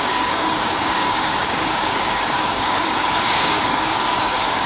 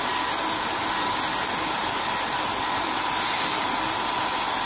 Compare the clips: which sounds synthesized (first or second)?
first